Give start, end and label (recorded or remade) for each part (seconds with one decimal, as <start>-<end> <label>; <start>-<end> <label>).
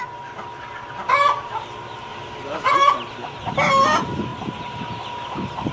0.0-2.1 recorded; 2.1-2.7 remade; 2.7-5.7 recorded